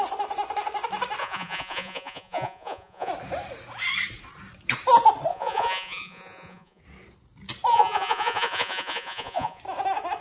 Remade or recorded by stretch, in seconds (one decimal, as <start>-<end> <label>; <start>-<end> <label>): 0.0-1.2 recorded; 1.2-3.1 remade; 3.1-5.3 recorded; 5.3-6.8 remade; 6.8-7.7 recorded; 7.7-9.6 remade; 9.6-10.2 recorded